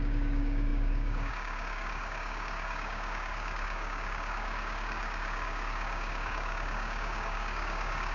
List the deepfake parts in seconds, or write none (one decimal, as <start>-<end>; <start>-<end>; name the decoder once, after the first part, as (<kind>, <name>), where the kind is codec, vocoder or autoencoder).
0.0-8.1 (codec, DAC)